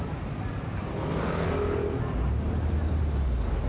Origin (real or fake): real